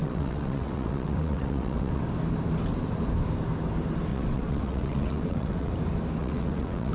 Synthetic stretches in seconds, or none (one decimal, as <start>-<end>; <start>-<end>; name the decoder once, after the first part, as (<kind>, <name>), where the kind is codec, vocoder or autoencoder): 0.0-2.0 (vocoder, WaveNeXt); 4.1-5.7; 6.2-6.9